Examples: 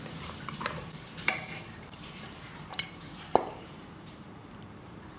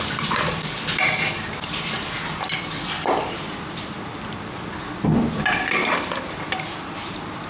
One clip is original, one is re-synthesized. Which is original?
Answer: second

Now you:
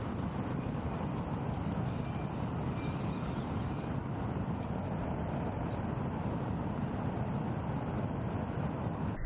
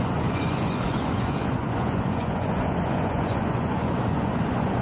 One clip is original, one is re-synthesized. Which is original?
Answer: first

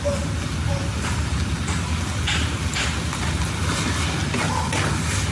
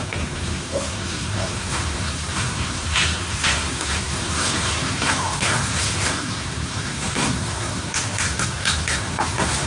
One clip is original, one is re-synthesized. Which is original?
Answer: first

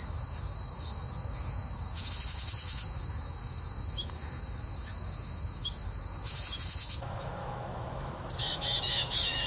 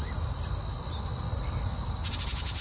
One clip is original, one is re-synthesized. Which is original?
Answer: second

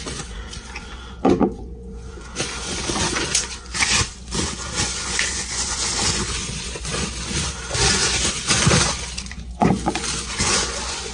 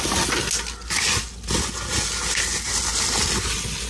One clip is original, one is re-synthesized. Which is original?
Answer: second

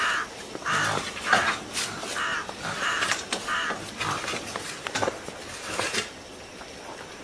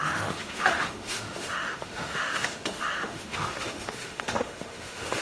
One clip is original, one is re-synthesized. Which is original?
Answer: first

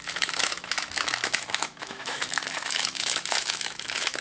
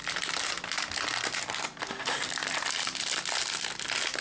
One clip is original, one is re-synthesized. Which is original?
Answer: second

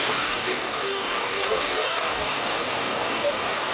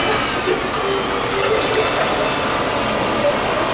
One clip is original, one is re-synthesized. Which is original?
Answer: second